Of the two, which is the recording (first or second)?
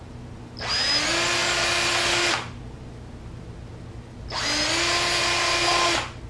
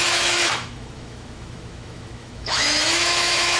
first